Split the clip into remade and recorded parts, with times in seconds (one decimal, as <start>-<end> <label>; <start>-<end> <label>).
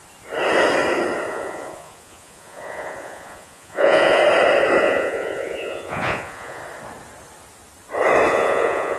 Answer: 0.0-1.3 recorded; 1.3-4.2 remade; 4.2-4.8 recorded; 4.8-6.6 remade; 6.6-8.3 recorded; 8.3-9.0 remade